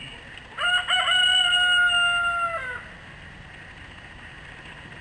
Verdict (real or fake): real